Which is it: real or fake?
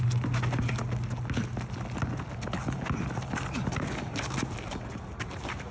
real